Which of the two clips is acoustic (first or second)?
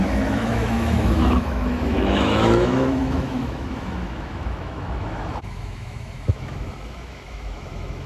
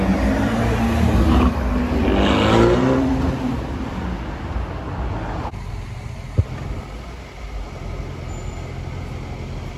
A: second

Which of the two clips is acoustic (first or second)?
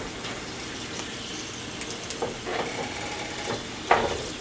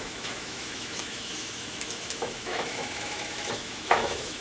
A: first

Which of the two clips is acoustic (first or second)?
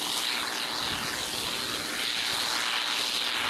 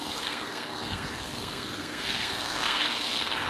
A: first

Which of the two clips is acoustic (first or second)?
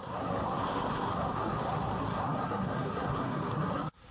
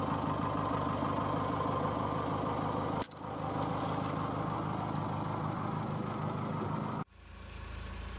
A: second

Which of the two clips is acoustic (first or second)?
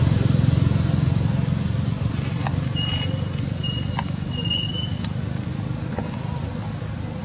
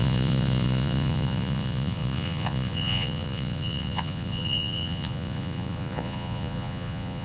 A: first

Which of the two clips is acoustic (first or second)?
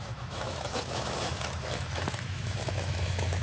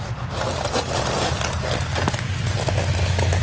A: second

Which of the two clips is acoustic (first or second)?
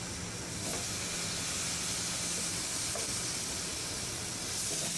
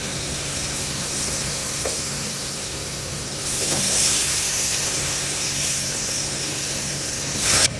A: first